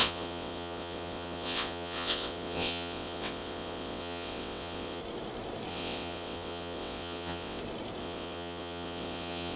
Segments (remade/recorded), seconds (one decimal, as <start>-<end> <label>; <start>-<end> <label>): 0.0-5.0 remade; 5.0-5.7 recorded; 5.7-7.6 remade; 7.6-8.0 recorded; 8.0-9.6 remade